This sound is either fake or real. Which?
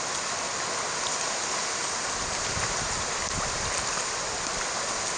real